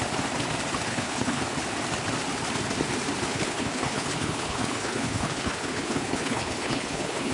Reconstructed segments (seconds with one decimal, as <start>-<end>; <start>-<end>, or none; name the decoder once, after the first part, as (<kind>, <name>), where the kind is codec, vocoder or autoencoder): 0.9-1.4 (codec, HILCodec); 3.3-7.3